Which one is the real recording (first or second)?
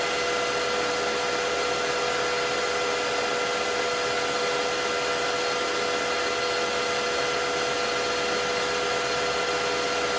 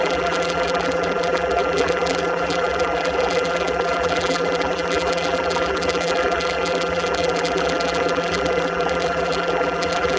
first